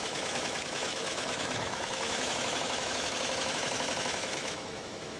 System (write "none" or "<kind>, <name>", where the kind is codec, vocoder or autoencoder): autoencoder, DAC-VAE